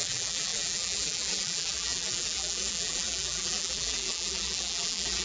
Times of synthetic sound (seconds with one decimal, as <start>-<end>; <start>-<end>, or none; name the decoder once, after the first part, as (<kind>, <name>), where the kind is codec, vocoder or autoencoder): 0.0-5.2 (vocoder, BigVGAN v2)